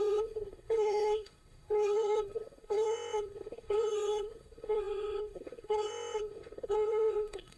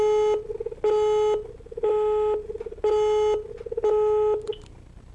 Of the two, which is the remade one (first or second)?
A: first